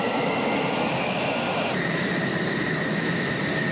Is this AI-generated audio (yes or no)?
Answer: no